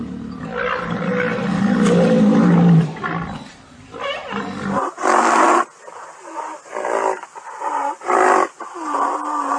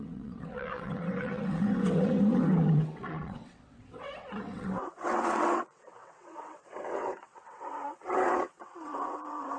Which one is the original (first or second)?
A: first